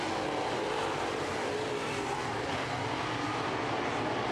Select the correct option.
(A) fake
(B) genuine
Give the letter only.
B